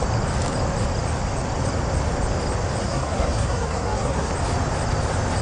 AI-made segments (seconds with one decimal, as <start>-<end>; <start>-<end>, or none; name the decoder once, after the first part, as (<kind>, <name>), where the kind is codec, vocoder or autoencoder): 2.8-4.3 (codec, SNAC)